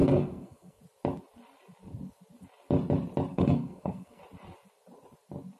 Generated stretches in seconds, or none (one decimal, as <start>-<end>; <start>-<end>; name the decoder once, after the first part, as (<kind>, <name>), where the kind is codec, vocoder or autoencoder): 0.0-0.8 (codec, SNAC); 3.3-4.2